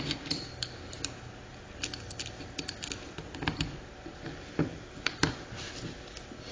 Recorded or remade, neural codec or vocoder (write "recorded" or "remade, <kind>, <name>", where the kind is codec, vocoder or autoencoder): recorded